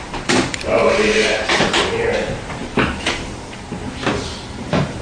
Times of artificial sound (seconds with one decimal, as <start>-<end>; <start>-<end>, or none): 0.0-5.0